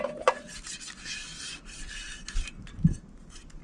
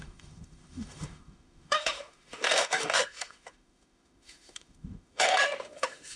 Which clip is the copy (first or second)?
second